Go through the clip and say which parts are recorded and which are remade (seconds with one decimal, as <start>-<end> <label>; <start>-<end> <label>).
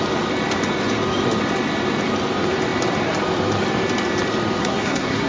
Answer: 0.0-4.6 recorded; 4.6-5.3 remade